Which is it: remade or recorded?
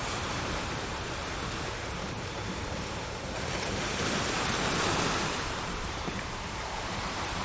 remade